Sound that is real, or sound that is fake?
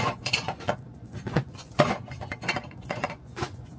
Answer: fake